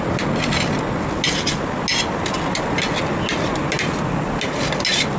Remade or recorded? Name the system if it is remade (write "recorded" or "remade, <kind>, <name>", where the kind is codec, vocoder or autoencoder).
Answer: recorded